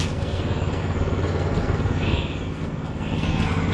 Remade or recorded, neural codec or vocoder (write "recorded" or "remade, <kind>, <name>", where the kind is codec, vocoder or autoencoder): remade, codec, SNAC